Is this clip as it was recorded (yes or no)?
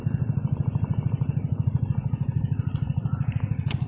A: yes